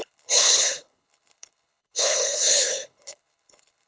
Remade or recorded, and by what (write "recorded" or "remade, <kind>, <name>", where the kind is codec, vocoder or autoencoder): remade, codec, HILCodec